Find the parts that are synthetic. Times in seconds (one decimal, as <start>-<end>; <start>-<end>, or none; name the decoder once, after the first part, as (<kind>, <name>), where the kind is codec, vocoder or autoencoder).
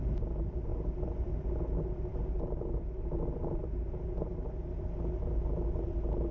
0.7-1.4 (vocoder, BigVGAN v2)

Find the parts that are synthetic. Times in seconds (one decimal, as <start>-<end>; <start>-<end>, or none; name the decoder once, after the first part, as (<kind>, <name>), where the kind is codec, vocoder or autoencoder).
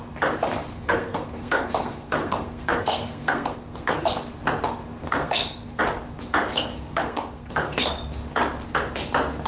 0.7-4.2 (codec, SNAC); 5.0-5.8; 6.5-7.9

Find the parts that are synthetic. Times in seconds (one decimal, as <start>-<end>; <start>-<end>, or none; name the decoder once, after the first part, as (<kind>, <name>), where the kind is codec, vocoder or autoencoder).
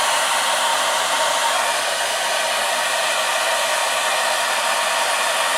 none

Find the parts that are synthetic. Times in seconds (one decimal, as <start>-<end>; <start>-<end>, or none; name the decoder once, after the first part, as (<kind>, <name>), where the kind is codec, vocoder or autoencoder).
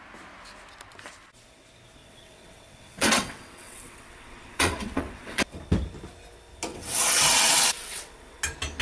2.0-5.4 (vocoder, WaveNeXt); 6.7-8.4